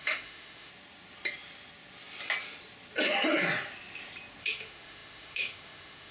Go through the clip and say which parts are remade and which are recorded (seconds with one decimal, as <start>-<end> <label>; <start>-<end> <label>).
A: 0.0-0.7 remade; 0.7-4.4 recorded; 4.4-6.1 remade